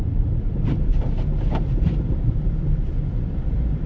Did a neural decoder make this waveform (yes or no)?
yes